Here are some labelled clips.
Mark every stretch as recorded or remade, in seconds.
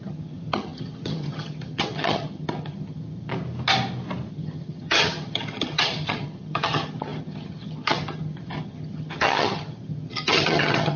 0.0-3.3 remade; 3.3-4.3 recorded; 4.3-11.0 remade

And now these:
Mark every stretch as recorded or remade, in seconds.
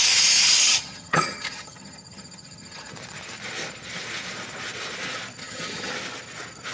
0.0-0.6 recorded; 0.6-2.9 remade; 2.9-5.4 recorded; 5.4-5.9 remade; 5.9-6.7 recorded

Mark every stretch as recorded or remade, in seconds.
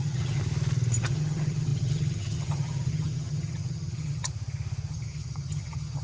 0.0-0.4 remade; 0.4-1.0 recorded; 1.0-4.3 remade; 4.3-4.9 recorded; 4.9-6.0 remade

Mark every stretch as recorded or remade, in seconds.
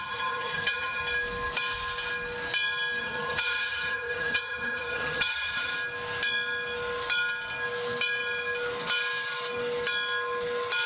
0.0-1.0 remade; 1.0-3.0 recorded; 3.0-5.7 remade; 5.7-10.9 recorded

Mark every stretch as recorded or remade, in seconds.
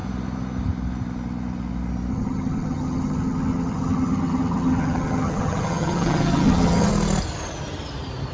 0.0-2.1 recorded; 2.1-6.9 remade; 6.9-8.3 recorded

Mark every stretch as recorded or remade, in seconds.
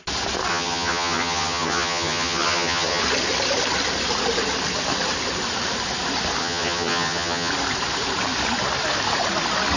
0.0-0.5 recorded; 0.5-3.0 remade; 3.0-6.4 recorded; 6.4-7.5 remade; 7.5-9.8 recorded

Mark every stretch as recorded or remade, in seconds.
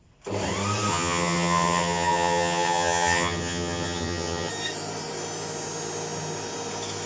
0.0-0.9 recorded; 0.9-4.5 remade; 4.5-7.1 recorded